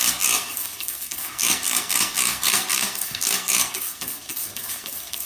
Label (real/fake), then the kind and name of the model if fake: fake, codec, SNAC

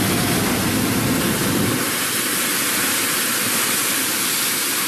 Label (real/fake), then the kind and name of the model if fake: real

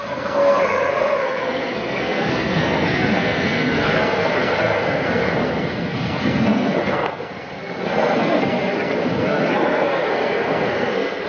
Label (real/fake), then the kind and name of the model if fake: fake, codec, SNAC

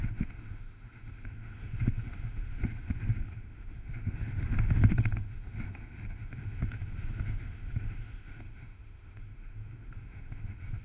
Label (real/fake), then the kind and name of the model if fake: fake, autoencoder, DAC-VAE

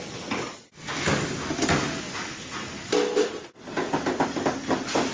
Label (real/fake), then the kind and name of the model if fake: real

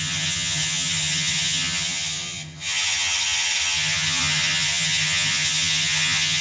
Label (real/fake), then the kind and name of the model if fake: fake, vocoder, HiFi-GAN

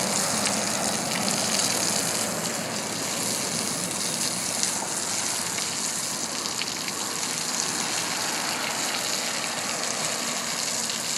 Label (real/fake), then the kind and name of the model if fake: real